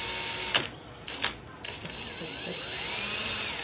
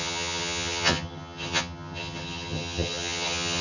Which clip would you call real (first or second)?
first